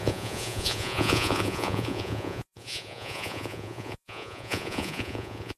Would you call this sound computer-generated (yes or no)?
yes